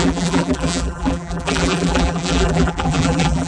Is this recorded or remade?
remade